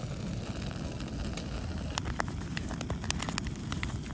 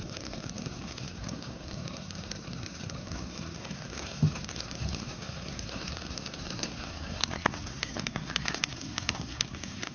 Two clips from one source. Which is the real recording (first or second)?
first